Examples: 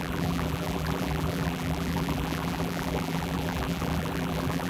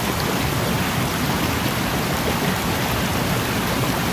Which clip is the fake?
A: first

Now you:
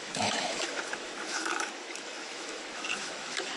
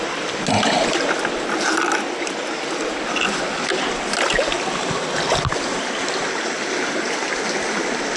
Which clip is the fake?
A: first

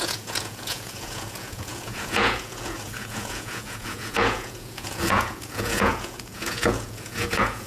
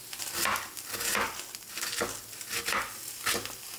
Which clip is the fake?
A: first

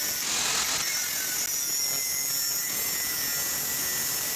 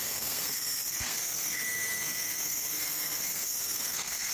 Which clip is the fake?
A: second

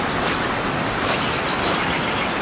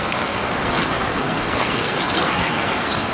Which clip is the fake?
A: second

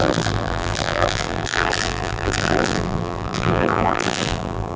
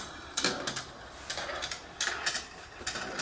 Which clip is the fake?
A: first